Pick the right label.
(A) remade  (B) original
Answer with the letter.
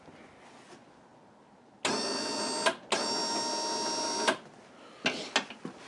B